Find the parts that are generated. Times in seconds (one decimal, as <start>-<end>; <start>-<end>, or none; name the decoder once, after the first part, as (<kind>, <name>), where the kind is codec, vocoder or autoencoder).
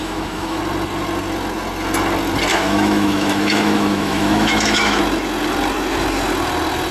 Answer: 0.0-0.6 (autoencoder, DAC-VAE); 2.5-5.0